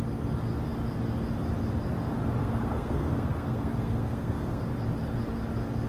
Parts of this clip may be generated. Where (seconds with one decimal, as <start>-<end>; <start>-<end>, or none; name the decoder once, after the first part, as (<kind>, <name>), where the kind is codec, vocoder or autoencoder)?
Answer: 2.4-4.6 (codec, SNAC)

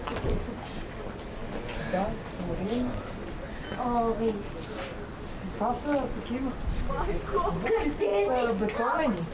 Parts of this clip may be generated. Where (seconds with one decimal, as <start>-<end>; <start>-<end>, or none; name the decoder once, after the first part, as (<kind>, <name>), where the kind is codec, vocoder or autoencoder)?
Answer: none